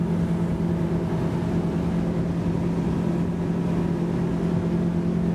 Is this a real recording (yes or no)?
yes